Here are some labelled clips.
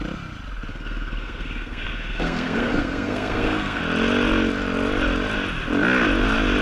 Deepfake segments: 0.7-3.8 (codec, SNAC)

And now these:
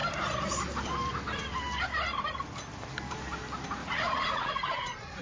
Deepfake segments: 3.8-5.2 (vocoder, Vocos)

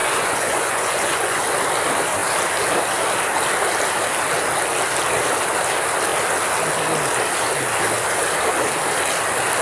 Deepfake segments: 0.0-1.4 (vocoder, Vocos)

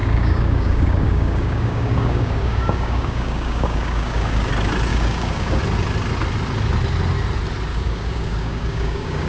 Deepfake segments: 0.0-4.5 (codec, DAC); 4.9-5.6; 7.7-9.3